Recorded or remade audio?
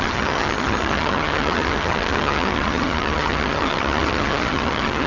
remade